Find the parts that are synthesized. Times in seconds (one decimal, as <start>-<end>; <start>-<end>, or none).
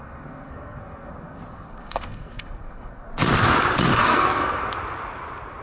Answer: 0.0-3.1; 3.9-4.7